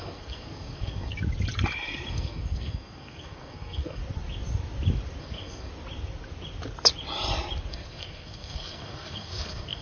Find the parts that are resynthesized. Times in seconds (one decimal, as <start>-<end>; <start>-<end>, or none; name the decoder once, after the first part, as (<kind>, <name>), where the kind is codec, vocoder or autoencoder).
0.0-1.1 (codec, SNAC); 2.1-4.0; 5.2-5.7; 7.7-9.8